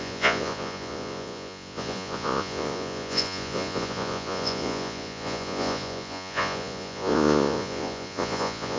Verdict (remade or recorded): remade